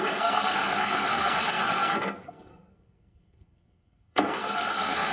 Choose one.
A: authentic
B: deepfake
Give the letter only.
B